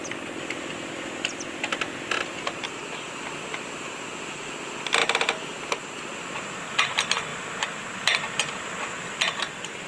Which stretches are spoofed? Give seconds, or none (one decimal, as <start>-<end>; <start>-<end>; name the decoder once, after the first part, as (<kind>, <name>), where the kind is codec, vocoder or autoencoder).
none